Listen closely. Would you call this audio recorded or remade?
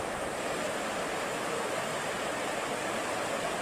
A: recorded